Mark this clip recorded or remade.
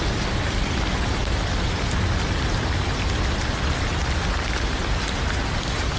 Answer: remade